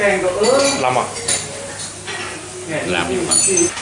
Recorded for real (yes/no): yes